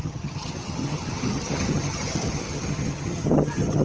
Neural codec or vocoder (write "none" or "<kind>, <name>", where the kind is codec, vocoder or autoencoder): vocoder, HiFi-GAN